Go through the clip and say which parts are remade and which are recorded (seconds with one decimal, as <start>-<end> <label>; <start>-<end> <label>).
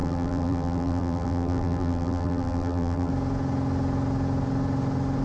0.0-3.1 remade; 3.1-5.2 recorded